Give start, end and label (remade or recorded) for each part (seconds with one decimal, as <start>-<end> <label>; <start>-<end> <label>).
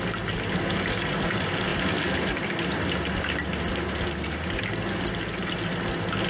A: 0.0-6.3 recorded